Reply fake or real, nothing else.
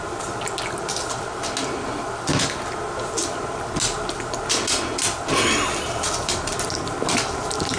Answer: real